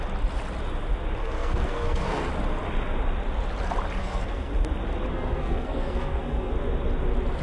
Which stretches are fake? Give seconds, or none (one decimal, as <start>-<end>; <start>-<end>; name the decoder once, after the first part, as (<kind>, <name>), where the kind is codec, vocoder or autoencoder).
1.2-2.3 (codec, SNAC); 4.0-4.5; 5.1-6.5